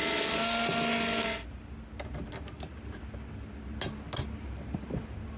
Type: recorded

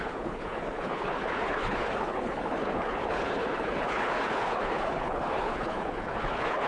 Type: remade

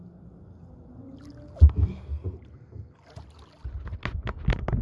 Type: recorded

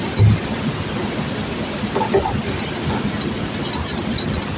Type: recorded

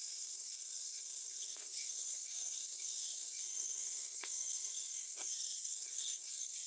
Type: remade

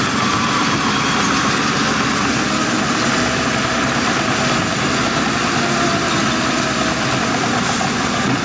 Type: recorded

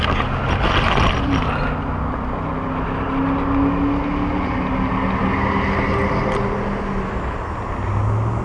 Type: recorded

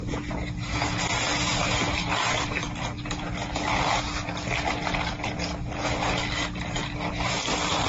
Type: recorded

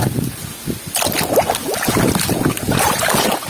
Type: recorded